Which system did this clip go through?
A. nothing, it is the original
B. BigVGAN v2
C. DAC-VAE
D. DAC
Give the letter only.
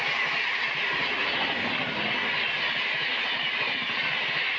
A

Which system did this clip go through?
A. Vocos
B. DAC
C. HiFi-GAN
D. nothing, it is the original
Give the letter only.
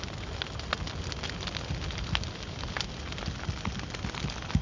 D